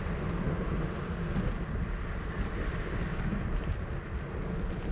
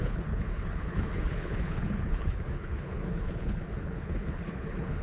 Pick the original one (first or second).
first